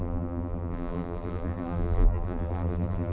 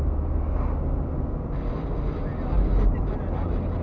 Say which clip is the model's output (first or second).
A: first